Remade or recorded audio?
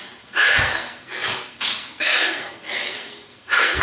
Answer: remade